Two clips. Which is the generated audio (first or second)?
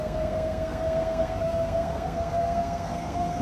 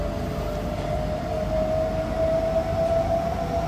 first